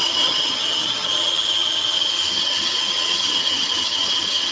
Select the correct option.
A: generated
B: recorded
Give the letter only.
A